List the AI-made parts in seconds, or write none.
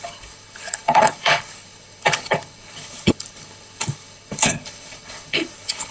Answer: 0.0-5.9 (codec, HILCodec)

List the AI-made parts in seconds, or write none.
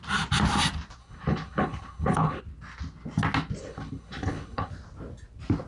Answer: 1.0-2.4 (codec, HILCodec); 3.6-4.7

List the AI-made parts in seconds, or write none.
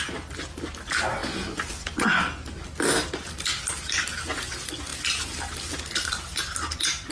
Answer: none